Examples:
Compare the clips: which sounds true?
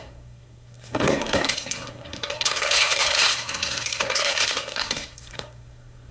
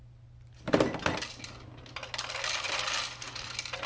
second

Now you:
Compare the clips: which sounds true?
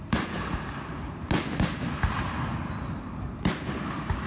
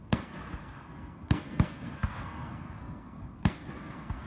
first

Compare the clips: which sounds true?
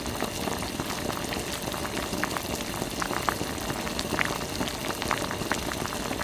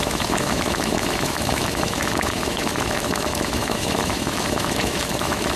first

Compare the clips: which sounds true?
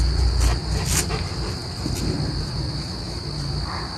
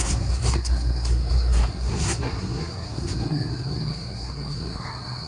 first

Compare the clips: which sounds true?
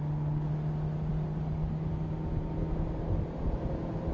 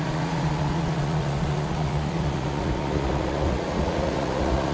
first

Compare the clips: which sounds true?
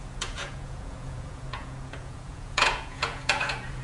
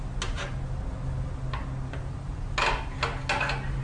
second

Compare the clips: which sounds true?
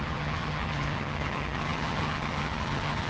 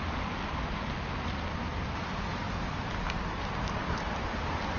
second